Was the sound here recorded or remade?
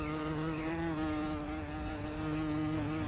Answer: recorded